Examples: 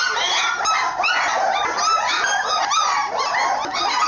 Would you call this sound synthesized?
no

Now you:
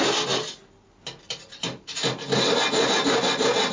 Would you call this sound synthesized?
no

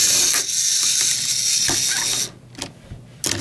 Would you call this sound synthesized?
no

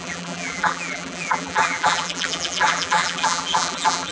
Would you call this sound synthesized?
yes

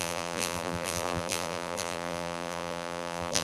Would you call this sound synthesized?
yes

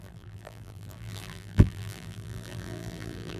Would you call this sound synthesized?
yes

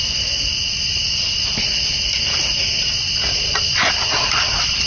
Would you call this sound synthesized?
no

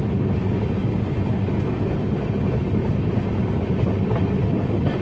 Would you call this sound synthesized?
no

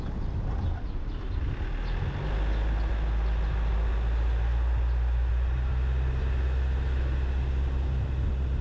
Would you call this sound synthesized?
no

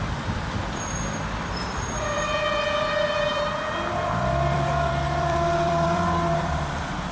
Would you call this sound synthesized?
yes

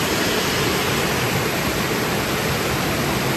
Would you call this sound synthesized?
no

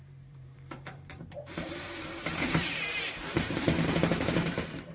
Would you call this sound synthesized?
yes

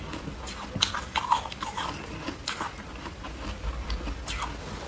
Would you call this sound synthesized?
no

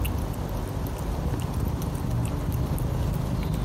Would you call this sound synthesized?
no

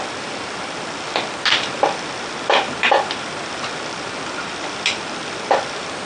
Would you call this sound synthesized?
yes